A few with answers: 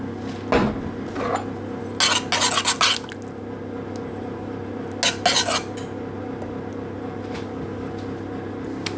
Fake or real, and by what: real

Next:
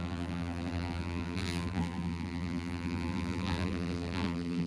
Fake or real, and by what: fake, vocoder, BigVGAN v2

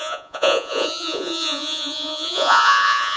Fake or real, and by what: fake, vocoder, Vocos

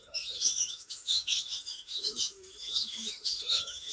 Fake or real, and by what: fake, autoencoder, DAC-VAE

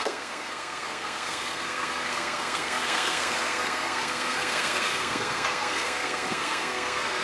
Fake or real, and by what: fake, codec, SNAC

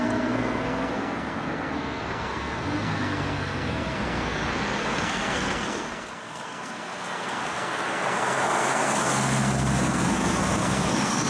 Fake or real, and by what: fake, codec, SNAC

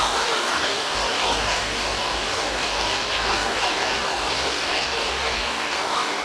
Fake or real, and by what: fake, codec, DAC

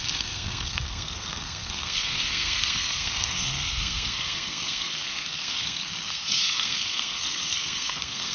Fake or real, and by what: fake, codec, SNAC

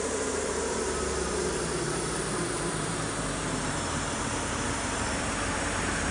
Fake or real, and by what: fake, vocoder, BigVGAN v2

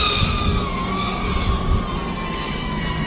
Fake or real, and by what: real